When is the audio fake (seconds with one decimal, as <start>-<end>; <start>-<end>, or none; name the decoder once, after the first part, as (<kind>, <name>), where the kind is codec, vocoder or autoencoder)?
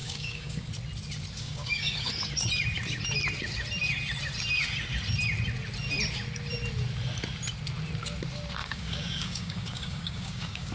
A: 0.0-0.7 (codec, DAC); 1.4-2.1; 8.6-10.7